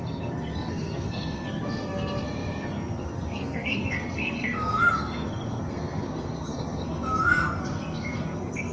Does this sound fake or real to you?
fake